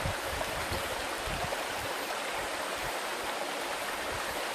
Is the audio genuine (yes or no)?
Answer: no